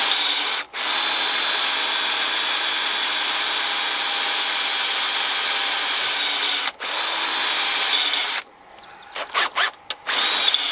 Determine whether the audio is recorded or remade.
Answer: recorded